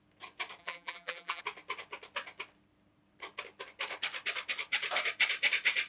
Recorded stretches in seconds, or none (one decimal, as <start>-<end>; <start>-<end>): 0.0-0.6; 1.4-5.9